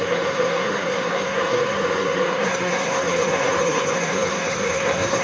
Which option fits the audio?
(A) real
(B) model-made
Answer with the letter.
B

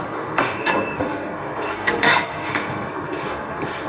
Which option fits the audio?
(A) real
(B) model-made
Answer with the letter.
B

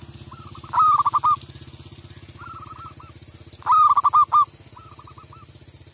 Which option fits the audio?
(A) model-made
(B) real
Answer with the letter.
B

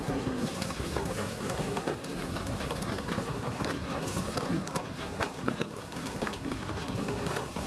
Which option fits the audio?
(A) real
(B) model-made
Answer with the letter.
B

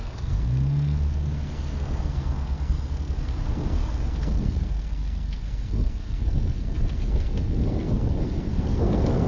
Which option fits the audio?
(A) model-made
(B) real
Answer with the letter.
A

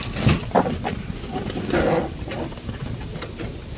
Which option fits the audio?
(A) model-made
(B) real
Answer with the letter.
B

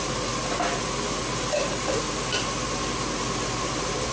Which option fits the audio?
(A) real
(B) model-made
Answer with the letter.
A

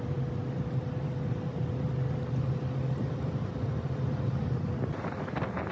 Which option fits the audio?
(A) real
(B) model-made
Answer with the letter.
A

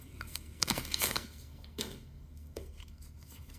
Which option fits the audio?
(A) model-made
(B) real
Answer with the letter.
A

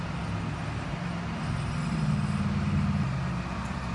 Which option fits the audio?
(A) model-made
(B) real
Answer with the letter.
B